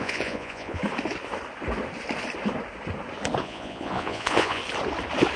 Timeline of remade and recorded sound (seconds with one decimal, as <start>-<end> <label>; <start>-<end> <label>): 0.0-0.8 remade; 0.8-3.4 recorded; 3.4-4.6 remade; 4.6-5.4 recorded